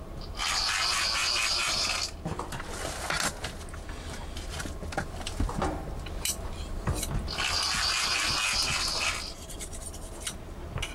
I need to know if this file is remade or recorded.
recorded